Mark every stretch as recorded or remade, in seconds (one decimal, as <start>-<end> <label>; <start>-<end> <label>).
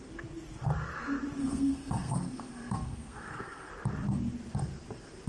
0.0-1.4 recorded; 1.4-3.7 remade; 3.7-5.3 recorded